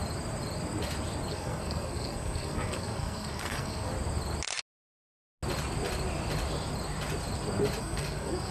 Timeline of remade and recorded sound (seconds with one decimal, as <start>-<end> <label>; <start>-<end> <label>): 0.0-1.3 recorded; 1.3-3.9 remade; 3.9-7.8 recorded; 7.8-8.5 remade